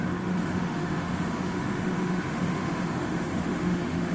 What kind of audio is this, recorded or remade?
remade